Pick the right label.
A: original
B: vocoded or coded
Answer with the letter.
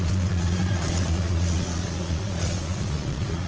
B